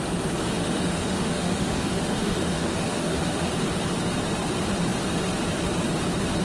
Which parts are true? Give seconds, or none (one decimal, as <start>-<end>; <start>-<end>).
0.0-0.6; 3.5-6.4